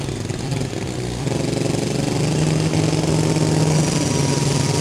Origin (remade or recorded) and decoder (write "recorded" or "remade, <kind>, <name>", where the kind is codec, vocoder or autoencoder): recorded